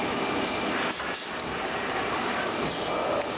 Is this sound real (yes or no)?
yes